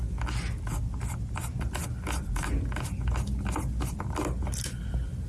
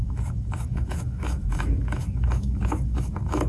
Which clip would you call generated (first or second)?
second